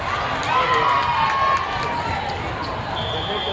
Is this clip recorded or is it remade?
recorded